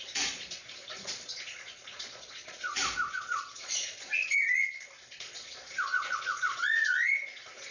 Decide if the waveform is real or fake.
fake